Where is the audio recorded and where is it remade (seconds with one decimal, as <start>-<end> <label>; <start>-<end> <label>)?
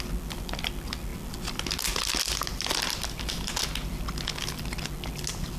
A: 0.0-5.6 recorded